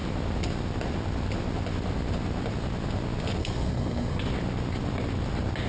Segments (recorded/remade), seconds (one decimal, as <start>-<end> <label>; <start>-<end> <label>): 0.0-3.4 recorded; 3.4-4.2 remade; 4.2-5.7 recorded